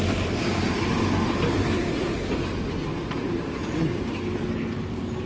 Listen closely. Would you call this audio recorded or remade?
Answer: recorded